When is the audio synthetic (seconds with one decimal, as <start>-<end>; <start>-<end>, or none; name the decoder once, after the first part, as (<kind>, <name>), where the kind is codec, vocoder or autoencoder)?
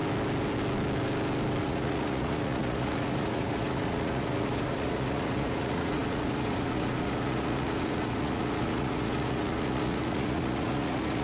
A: 1.6-11.2 (vocoder, Vocos)